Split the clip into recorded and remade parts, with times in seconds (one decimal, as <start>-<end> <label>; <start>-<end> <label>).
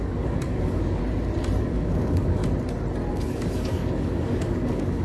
0.0-1.0 remade; 1.0-1.6 recorded; 1.6-2.4 remade; 2.4-3.1 recorded; 3.1-5.0 remade